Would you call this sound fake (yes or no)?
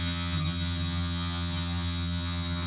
yes